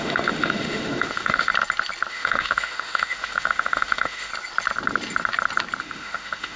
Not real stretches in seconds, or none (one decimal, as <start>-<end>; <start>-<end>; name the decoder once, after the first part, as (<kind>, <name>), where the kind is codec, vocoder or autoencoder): 0.0-1.5 (autoencoder, DAC-VAE); 2.1-4.3; 5.8-6.6